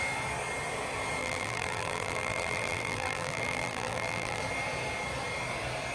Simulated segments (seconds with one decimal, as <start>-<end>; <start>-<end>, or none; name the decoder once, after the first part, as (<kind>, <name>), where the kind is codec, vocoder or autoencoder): 1.2-4.4 (vocoder, BigVGAN v2)